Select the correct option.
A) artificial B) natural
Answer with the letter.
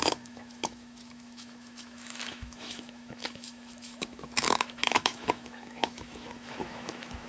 A